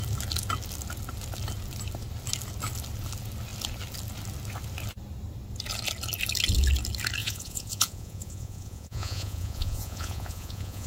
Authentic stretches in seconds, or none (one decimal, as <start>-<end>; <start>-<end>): 0.0-7.2